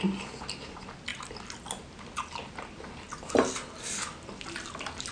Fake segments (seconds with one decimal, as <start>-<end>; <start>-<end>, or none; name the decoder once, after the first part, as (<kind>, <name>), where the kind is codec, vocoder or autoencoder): 1.1-2.5 (vocoder, BigVGAN v2)